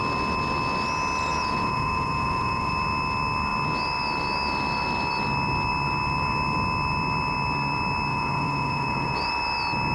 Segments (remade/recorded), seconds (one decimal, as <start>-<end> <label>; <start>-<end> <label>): 0.0-1.3 recorded; 1.3-2.7 remade; 2.7-8.1 recorded; 8.1-9.3 remade; 9.3-9.9 recorded